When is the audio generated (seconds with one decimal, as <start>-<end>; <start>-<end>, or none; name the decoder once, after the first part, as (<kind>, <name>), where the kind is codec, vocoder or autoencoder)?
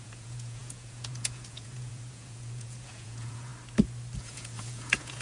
0.0-3.5 (vocoder, Vocos); 4.2-5.2